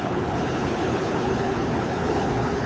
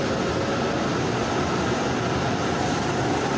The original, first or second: second